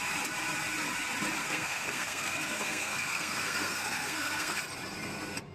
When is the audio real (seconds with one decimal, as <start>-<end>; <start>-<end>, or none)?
0.0-1.4; 4.6-5.5

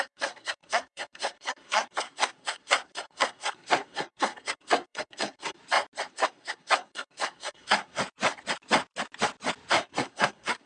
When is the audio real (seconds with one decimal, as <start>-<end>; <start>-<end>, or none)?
5.6-6.1; 8.0-9.7

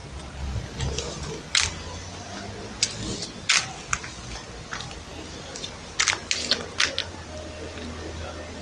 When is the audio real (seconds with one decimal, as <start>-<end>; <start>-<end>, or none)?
0.0-8.6

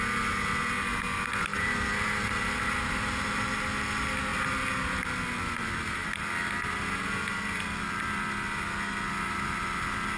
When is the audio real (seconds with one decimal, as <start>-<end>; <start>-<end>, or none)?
0.0-10.2

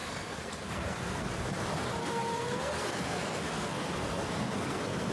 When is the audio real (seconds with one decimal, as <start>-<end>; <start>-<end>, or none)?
1.3-2.0

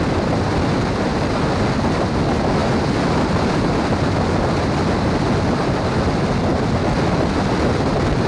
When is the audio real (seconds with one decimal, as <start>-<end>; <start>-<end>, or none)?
0.0-8.3

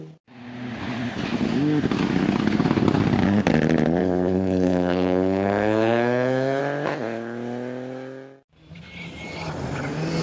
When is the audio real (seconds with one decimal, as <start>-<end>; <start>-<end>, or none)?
0.0-4.0; 6.6-10.2